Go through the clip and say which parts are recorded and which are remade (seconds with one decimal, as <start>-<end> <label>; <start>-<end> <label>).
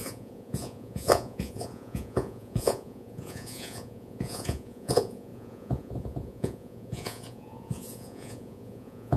0.0-9.2 remade